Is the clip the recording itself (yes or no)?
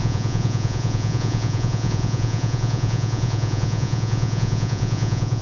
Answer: no